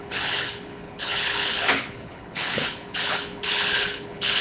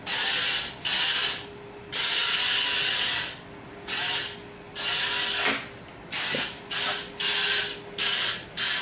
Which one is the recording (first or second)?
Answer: second